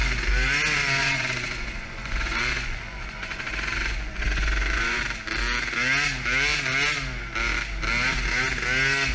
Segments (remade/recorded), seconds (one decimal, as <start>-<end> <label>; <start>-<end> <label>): 0.0-1.0 recorded; 1.0-5.0 remade; 5.0-9.1 recorded